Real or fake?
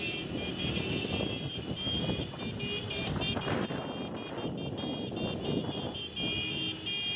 real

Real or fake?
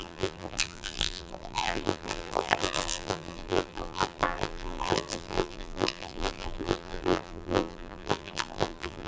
fake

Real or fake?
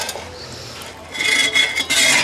real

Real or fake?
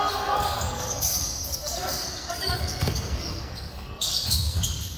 fake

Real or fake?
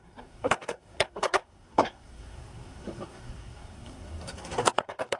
fake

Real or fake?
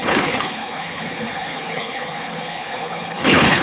fake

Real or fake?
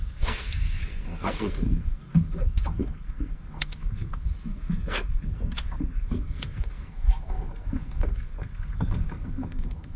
fake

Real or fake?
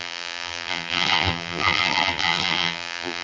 fake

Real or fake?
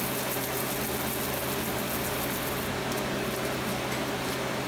real